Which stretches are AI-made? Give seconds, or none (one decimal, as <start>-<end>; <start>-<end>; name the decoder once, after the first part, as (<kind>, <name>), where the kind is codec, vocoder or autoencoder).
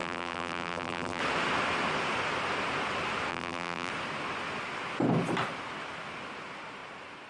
0.0-1.2 (vocoder, BigVGAN v2); 3.3-3.9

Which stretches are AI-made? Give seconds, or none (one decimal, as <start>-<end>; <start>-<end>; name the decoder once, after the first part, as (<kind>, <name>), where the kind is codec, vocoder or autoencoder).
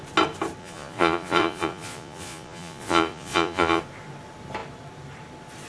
0.6-3.8 (vocoder, Vocos)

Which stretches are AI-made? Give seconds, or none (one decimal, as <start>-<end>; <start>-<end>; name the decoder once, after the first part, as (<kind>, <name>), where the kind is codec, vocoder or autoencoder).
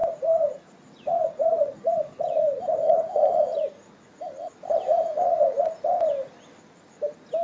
0.0-4.2 (vocoder, Vocos); 4.9-6.0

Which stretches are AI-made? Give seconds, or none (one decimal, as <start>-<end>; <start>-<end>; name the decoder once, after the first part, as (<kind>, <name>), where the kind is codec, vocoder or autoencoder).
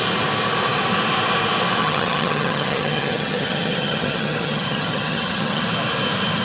1.8-5.6 (vocoder, HiFi-GAN)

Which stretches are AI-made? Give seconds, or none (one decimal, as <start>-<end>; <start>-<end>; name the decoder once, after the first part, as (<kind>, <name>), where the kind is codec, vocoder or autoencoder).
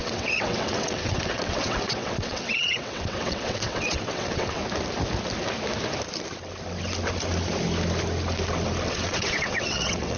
0.0-4.6 (vocoder, WaveNeXt); 8.9-10.2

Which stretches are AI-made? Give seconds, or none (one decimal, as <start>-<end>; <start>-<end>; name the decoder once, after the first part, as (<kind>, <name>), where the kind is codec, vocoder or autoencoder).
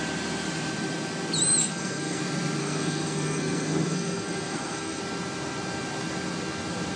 1.6-2.2 (codec, SNAC); 2.6-5.0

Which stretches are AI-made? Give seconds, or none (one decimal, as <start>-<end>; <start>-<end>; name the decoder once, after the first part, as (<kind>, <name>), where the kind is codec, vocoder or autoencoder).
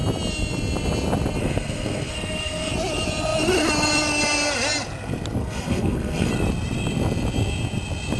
1.4-2.7 (codec, SNAC); 5.4-6.3